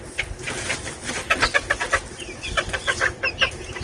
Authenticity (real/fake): real